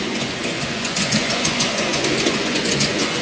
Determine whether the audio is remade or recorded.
remade